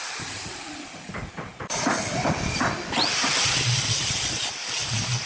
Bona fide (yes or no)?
yes